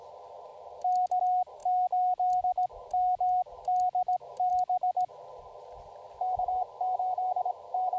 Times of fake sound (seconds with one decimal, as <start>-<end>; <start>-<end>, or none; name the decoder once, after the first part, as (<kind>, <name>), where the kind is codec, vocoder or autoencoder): none